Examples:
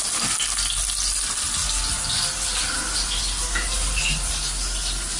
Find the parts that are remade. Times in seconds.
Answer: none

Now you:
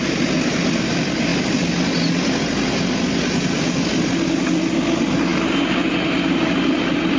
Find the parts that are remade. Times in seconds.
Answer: none

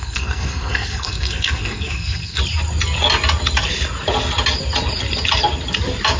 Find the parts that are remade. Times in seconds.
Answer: 0.0-2.4 (codec, SNAC)

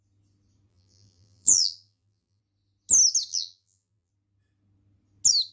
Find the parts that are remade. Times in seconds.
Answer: 0.7-2.4 (vocoder, BigVGAN v2); 3.3-4.1

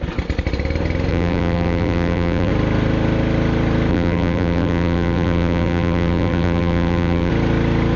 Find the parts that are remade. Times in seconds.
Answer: 1.1-2.5 (vocoder, BigVGAN v2); 3.9-7.3